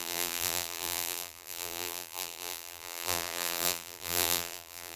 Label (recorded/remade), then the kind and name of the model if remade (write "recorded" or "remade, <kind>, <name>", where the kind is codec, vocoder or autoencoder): remade, vocoder, BigVGAN v2